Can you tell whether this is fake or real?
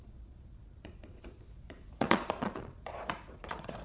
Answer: fake